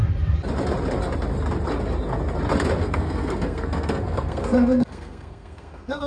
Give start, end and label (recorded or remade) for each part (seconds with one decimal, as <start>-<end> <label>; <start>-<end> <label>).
0.0-2.8 recorded; 2.8-6.1 remade